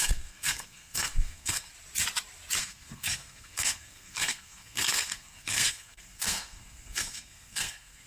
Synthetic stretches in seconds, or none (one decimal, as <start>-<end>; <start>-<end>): 0.0-1.7; 2.6-8.1